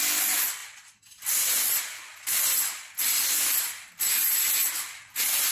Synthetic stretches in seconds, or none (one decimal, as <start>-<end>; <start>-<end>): none